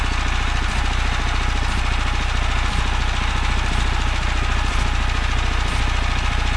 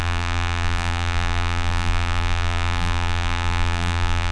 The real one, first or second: first